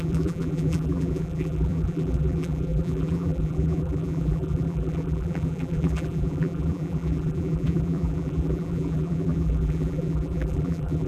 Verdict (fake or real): fake